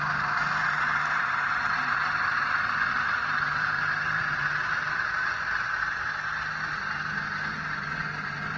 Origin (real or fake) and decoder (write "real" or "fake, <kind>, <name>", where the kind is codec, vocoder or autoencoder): real